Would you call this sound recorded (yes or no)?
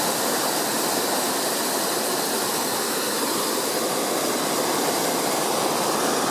yes